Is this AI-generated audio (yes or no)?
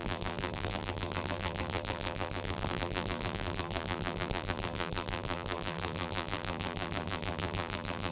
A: yes